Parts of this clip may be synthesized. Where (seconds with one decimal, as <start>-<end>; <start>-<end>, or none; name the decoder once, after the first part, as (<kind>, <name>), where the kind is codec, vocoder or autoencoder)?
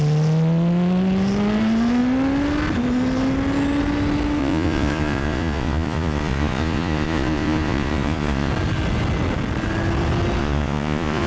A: 4.4-8.5 (vocoder, Vocos); 10.4-11.3